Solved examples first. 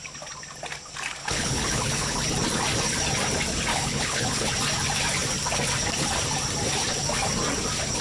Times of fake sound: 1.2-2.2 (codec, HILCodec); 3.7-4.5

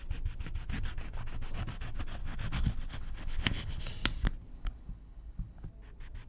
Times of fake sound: 2.2-3.8 (codec, HILCodec); 4.5-5.7

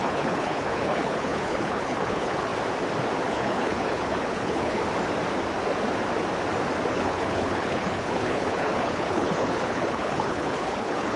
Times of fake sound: 0.0-2.5 (codec, HILCodec); 3.3-4.8; 6.9-11.2

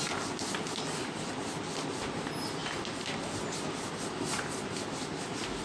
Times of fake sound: none

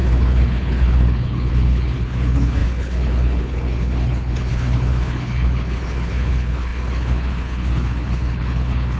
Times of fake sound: 0.0-9.0 (codec, HILCodec)

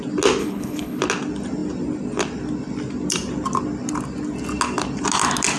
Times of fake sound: 0.4-1.0 (codec, HILCodec)

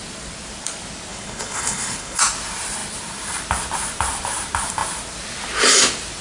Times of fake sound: 1.1-2.2 (codec, HILCodec)

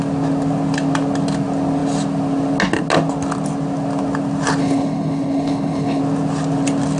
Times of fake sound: 4.6-6.0 (codec, HILCodec)